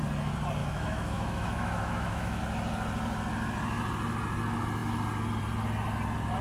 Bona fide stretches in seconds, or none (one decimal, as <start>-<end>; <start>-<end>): 0.0-0.6; 2.4-6.4